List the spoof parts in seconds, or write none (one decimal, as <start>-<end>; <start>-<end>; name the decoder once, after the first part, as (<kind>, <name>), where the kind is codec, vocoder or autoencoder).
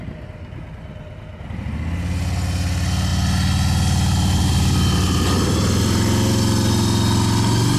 none